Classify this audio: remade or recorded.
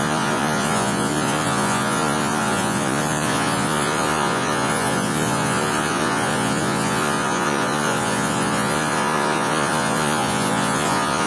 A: remade